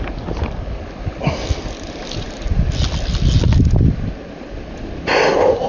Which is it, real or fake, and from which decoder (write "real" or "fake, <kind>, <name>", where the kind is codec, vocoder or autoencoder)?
real